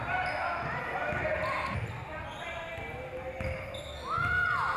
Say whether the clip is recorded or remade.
recorded